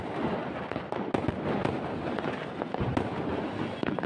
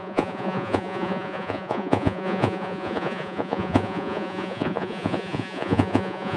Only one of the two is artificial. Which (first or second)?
second